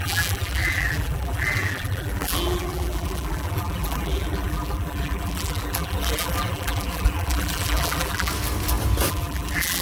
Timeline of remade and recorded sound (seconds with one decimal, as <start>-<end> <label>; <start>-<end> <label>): 0.0-8.3 remade; 8.3-9.1 recorded; 9.1-9.8 remade